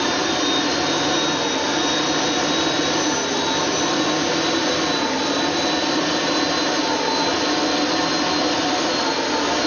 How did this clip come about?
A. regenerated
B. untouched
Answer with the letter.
B